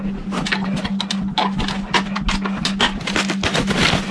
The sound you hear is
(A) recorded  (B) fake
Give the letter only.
A